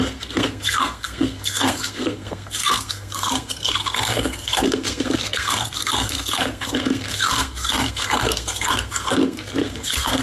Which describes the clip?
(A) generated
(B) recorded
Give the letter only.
A